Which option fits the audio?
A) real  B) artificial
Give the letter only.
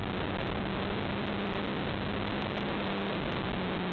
A